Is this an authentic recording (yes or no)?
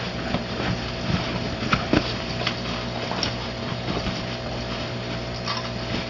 yes